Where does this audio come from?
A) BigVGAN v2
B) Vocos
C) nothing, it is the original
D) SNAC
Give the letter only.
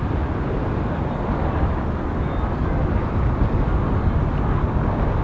C